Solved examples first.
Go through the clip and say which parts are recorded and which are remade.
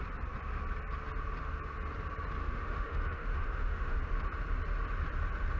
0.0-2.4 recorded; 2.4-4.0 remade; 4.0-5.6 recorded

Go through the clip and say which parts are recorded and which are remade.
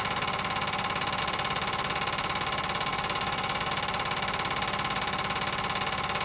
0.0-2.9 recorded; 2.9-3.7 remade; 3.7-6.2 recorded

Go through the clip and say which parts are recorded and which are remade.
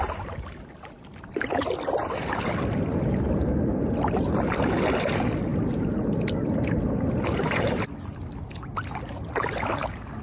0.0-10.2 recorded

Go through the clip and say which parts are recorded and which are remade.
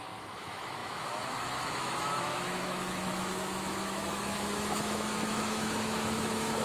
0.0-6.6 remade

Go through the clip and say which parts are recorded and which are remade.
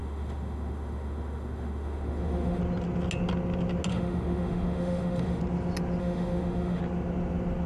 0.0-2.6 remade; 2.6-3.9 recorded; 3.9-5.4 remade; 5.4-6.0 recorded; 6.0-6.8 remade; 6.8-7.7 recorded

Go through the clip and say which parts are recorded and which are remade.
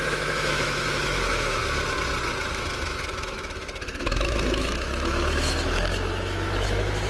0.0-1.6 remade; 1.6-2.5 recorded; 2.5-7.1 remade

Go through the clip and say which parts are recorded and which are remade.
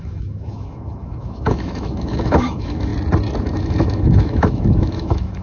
0.0-2.9 remade; 2.9-3.4 recorded; 3.4-5.4 remade